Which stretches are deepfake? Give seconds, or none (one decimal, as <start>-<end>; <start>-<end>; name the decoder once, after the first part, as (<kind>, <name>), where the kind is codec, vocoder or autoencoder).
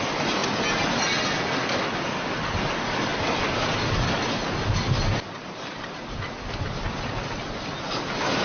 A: none